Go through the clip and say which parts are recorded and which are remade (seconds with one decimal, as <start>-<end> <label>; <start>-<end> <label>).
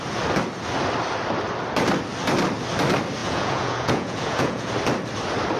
0.0-3.2 recorded; 3.2-4.7 remade; 4.7-5.6 recorded